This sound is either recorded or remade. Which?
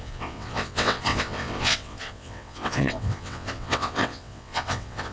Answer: remade